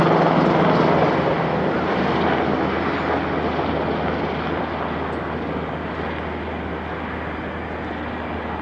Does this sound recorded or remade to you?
recorded